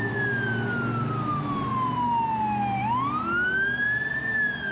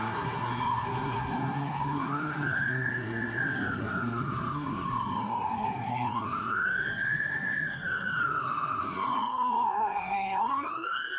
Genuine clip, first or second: first